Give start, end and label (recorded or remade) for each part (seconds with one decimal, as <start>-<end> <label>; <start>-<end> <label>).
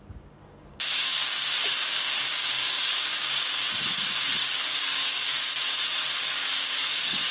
0.0-5.4 remade; 5.4-6.2 recorded; 6.2-7.3 remade